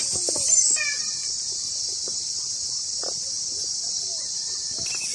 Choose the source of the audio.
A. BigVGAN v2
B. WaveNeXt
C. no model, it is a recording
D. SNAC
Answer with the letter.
C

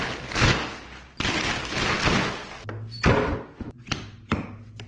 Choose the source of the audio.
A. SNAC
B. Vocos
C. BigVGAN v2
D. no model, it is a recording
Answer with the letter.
D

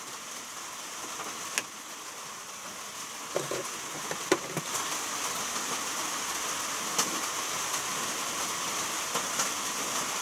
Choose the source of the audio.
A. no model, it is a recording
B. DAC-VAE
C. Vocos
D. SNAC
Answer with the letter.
A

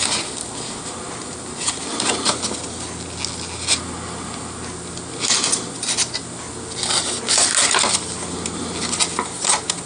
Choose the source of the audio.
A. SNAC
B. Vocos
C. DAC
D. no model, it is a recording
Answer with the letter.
D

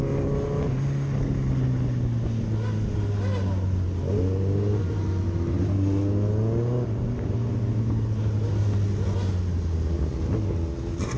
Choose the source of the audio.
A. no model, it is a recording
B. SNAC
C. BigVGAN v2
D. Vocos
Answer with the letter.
A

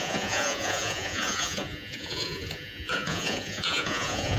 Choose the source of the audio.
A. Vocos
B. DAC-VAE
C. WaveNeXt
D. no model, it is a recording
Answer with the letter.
A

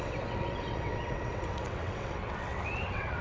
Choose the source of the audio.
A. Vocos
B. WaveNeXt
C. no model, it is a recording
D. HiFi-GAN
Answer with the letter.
B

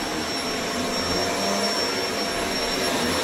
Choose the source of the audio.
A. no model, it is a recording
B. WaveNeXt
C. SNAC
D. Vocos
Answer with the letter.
A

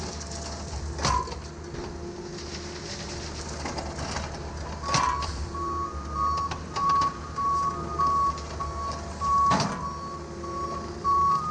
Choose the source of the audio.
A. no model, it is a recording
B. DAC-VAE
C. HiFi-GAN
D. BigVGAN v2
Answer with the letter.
A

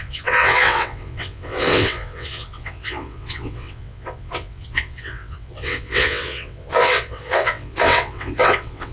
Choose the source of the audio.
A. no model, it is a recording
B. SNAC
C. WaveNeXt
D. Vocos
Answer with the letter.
C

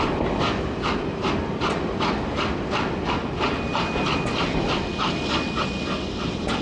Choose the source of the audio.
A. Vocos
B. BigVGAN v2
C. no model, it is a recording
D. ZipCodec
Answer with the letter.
C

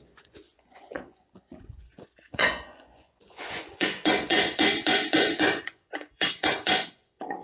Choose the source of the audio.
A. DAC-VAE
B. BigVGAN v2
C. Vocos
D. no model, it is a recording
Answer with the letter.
C